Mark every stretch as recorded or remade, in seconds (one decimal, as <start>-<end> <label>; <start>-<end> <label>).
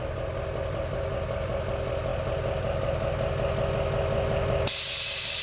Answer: 0.0-5.4 recorded